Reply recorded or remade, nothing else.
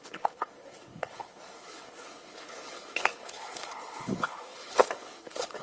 remade